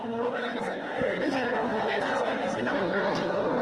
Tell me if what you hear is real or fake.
fake